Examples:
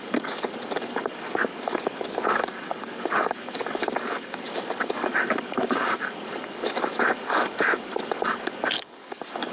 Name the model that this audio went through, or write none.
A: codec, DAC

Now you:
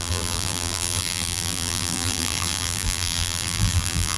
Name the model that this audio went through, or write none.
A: vocoder, BigVGAN v2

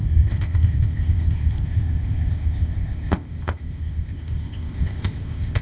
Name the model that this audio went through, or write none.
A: codec, ZipCodec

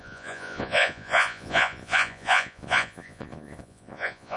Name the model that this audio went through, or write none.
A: vocoder, Vocos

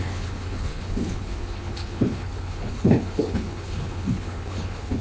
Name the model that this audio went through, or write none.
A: codec, HILCodec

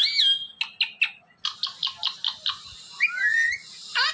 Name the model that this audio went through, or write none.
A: none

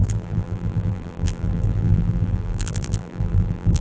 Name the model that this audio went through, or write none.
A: vocoder, BigVGAN v2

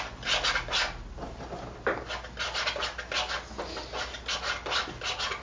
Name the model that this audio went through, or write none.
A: none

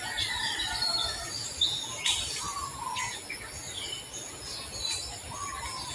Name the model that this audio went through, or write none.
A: none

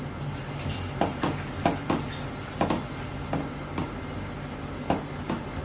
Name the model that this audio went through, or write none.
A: none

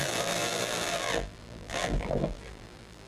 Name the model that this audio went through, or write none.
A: vocoder, BigVGAN v2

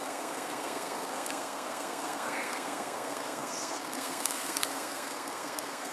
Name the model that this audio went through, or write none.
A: codec, SNAC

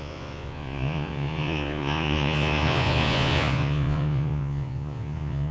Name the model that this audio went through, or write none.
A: vocoder, Vocos